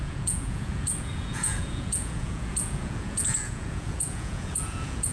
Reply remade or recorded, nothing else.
remade